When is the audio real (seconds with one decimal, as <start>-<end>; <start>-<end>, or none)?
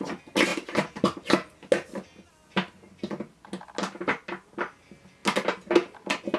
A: 0.0-0.5; 1.3-6.4